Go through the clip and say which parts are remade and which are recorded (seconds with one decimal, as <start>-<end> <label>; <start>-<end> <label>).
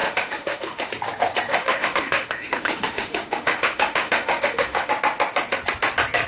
0.0-0.9 remade; 0.9-1.5 recorded; 1.5-4.9 remade; 4.9-6.3 recorded